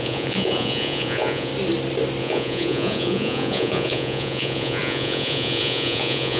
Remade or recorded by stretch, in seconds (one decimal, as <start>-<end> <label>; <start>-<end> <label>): 0.0-1.5 remade; 1.5-2.2 recorded; 2.2-6.4 remade